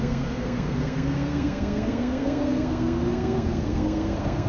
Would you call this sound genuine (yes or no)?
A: no